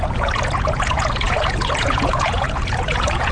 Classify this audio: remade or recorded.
remade